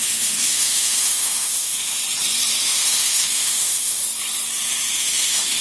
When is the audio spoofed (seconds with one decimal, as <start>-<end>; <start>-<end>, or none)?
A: 0.0-2.0; 2.6-4.0; 4.9-5.6